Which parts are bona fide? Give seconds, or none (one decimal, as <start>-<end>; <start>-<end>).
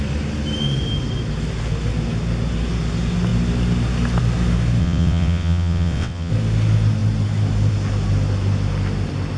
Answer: 0.0-4.8; 6.3-9.4